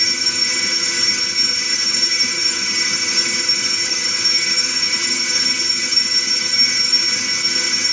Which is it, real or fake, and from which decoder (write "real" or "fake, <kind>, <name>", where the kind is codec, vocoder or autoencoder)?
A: fake, vocoder, HiFi-GAN